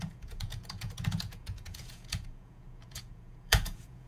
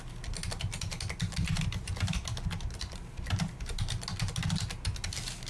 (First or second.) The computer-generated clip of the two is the first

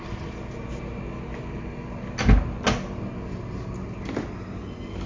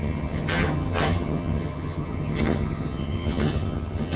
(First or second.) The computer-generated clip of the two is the second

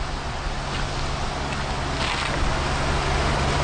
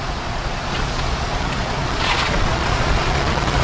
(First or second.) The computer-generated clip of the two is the second